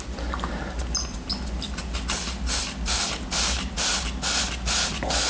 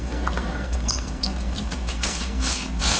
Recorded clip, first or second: first